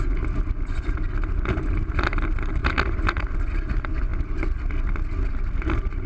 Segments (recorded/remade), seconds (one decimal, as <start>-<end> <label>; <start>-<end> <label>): 0.0-2.6 recorded; 2.6-3.2 remade; 3.2-6.1 recorded